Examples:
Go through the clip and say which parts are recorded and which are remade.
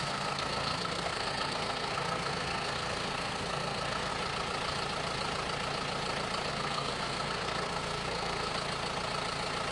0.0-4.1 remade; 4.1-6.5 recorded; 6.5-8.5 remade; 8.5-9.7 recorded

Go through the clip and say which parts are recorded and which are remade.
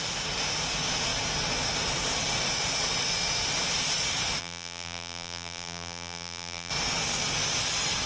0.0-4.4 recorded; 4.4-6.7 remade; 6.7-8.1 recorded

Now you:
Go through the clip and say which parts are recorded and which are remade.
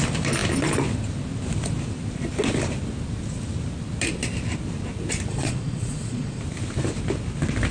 0.0-5.3 recorded; 5.3-6.4 remade; 6.4-7.7 recorded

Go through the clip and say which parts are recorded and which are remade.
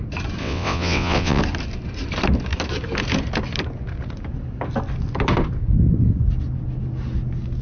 0.0-0.4 recorded; 0.4-1.4 remade; 1.4-7.6 recorded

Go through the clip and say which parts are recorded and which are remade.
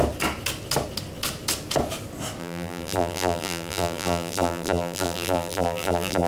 0.0-2.4 recorded; 2.4-6.3 remade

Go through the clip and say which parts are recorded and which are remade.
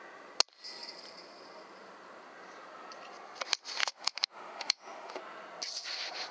0.0-3.8 recorded; 3.8-5.2 remade; 5.2-6.3 recorded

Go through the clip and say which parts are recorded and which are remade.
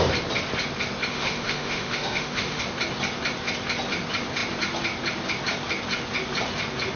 0.0-1.1 recorded; 1.1-2.6 remade; 2.6-7.0 recorded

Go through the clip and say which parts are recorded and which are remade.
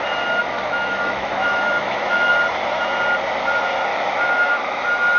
0.0-0.4 recorded; 0.4-2.3 remade; 2.3-3.9 recorded; 3.9-4.8 remade; 4.8-5.2 recorded